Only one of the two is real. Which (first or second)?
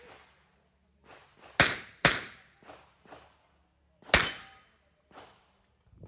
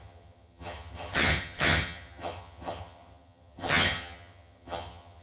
first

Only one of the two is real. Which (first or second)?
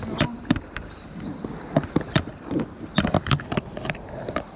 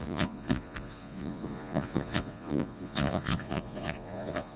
first